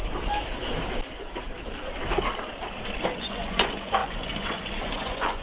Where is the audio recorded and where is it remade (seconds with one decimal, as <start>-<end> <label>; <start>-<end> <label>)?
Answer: 0.0-3.2 recorded; 3.2-5.4 remade